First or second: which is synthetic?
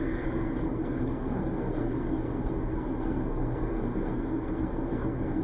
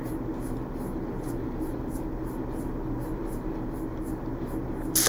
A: first